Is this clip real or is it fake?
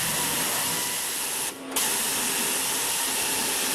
real